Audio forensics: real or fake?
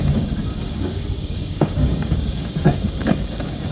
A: fake